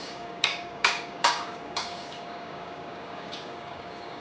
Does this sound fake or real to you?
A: fake